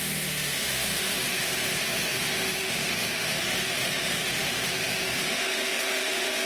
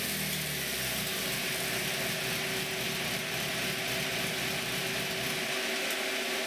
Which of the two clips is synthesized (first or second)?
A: first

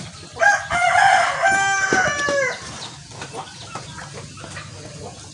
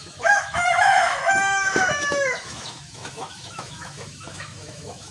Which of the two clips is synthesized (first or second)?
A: second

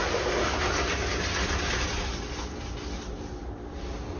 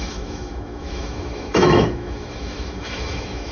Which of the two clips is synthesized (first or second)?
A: second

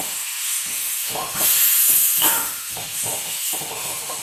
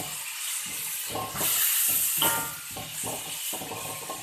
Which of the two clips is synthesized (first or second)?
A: first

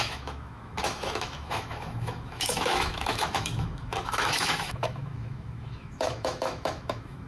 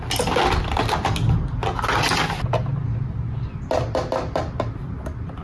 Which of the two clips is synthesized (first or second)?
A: first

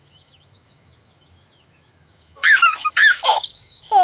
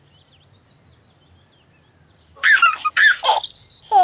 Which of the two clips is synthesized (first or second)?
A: first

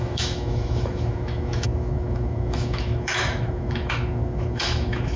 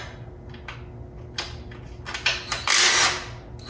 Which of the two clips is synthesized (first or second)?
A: first